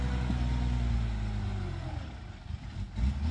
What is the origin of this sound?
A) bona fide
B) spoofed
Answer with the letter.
A